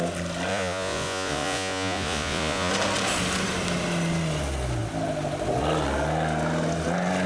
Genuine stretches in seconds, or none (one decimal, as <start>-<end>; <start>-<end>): 0.0-0.5; 2.7-7.3